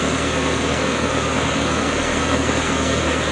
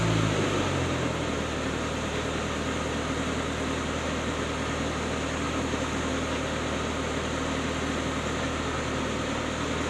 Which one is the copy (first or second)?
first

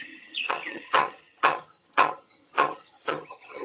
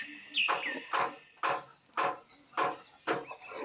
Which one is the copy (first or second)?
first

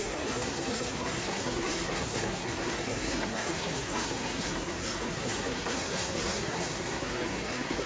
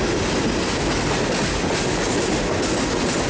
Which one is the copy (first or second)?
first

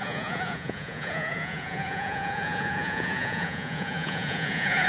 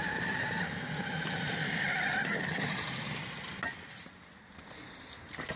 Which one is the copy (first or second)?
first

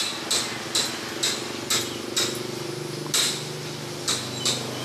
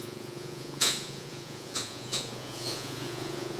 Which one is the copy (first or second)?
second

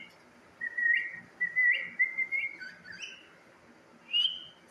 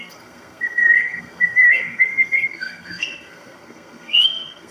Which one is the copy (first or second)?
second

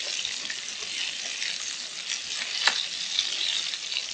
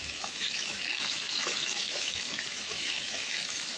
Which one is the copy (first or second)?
second